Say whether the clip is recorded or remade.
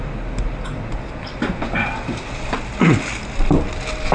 recorded